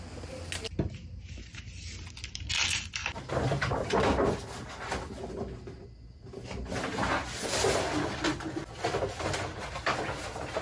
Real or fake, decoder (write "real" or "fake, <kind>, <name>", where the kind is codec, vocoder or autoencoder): real